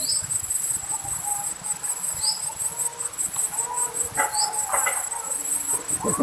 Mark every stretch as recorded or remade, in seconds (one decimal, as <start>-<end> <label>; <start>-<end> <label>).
0.0-6.2 recorded